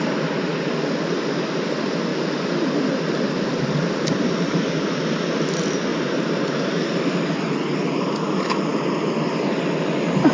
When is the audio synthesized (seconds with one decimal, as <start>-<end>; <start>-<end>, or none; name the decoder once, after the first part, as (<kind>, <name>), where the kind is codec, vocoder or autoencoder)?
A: 2.1-3.0 (vocoder, BigVGAN v2); 5.9-6.8